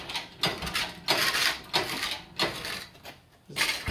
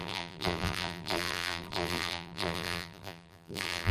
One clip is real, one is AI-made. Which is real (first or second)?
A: first